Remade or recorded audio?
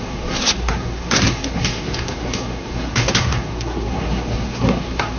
remade